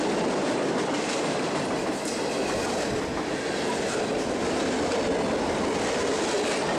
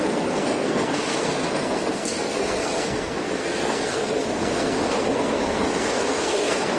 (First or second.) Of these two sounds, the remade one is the second